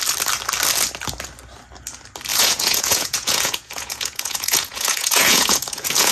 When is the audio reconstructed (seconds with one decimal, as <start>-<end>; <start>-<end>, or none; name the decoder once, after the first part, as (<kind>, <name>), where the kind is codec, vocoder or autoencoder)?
2.3-6.1 (vocoder, Vocos)